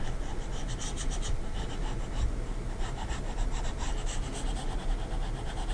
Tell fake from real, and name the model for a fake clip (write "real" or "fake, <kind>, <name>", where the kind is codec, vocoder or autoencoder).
real